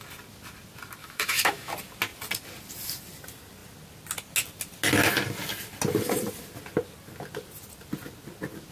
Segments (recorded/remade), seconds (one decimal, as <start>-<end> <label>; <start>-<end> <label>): 0.0-1.0 recorded; 1.0-1.7 remade; 1.7-8.7 recorded